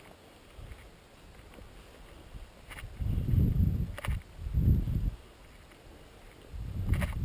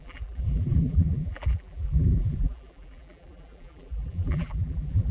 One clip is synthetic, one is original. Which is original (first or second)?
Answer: first